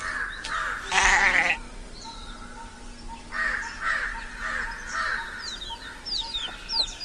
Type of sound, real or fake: real